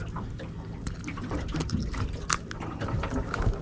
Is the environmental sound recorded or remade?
recorded